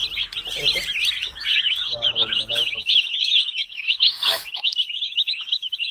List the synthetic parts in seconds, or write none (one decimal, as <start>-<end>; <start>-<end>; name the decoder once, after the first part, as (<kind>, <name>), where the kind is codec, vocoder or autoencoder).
1.2-5.9 (codec, DAC)